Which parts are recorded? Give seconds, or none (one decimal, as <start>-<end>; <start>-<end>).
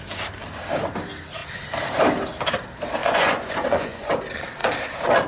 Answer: 0.0-3.0; 4.1-5.3